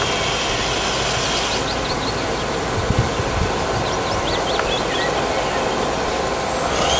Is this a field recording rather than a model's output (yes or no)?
yes